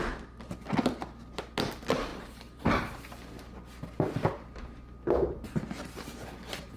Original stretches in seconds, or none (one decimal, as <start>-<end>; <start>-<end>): 0.0-6.8